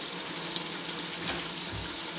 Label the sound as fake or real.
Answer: real